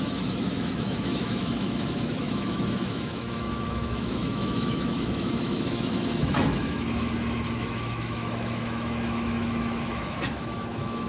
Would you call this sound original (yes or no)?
no